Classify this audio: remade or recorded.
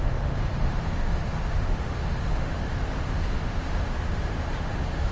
remade